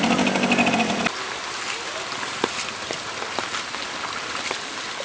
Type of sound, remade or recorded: recorded